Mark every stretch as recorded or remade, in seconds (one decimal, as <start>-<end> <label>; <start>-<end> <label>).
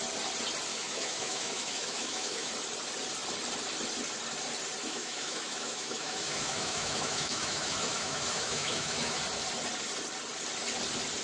0.0-0.7 recorded; 0.7-2.5 remade; 2.5-4.8 recorded; 4.8-9.2 remade; 9.2-11.2 recorded